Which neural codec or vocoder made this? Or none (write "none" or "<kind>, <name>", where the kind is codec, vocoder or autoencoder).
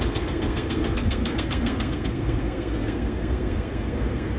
codec, SNAC